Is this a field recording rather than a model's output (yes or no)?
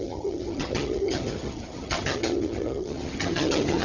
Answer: no